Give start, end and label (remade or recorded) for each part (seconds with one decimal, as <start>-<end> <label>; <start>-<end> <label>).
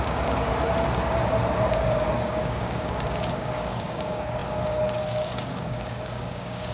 0.0-0.5 remade; 0.5-1.7 recorded; 1.7-6.7 remade